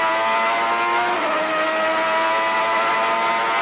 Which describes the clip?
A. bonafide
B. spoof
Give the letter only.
A